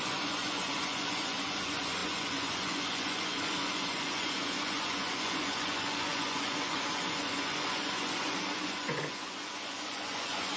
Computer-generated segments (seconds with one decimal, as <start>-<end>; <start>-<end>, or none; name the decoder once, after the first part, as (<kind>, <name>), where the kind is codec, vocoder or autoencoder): 0.0-10.6 (vocoder, Vocos)